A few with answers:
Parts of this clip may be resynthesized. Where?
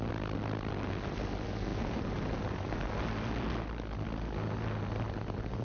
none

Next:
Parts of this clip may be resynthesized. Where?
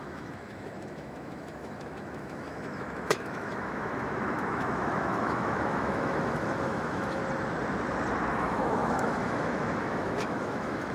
0.0-7.2 (autoencoder, DAC-VAE); 8.3-10.9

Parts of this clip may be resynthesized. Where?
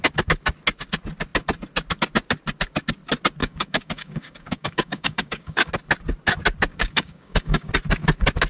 3.4-5.7 (codec, DAC); 6.7-7.7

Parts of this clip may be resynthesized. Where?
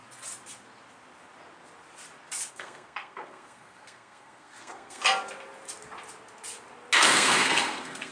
2.5-5.0 (codec, SNAC); 7.0-8.1